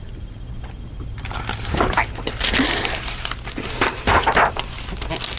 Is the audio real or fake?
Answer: real